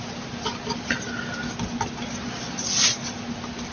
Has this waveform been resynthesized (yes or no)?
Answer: no